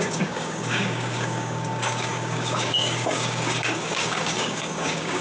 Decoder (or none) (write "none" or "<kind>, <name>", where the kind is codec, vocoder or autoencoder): codec, DAC